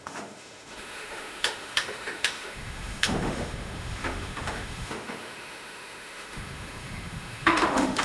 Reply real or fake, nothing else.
fake